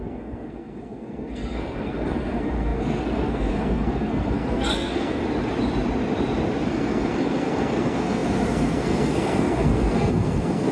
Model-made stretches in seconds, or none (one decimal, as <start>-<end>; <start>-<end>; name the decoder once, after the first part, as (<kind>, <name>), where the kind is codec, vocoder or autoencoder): 0.0-5.2 (codec, SNAC); 6.7-10.7